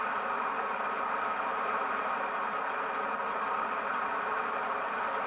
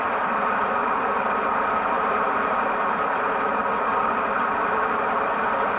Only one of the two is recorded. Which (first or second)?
first